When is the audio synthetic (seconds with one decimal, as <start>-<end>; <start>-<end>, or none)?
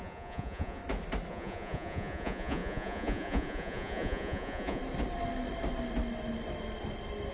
0.0-0.8; 1.3-4.8